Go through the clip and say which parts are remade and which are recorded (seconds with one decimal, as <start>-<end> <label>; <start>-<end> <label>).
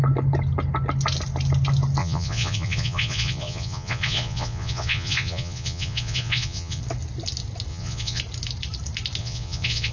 0.0-2.0 recorded; 2.0-6.8 remade; 6.8-7.7 recorded; 7.7-8.2 remade; 8.2-9.2 recorded; 9.2-9.9 remade